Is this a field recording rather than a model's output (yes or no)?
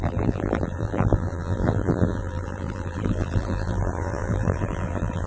no